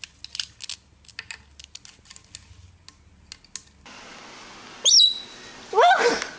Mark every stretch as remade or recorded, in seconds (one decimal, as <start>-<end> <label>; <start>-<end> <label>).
0.0-6.4 recorded